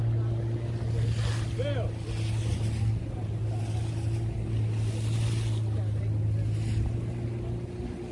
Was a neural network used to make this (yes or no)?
no